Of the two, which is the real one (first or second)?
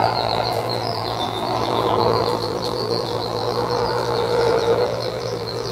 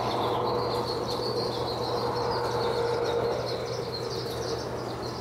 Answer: second